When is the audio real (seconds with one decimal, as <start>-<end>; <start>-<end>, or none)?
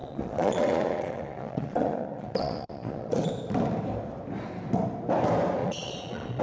3.3-5.6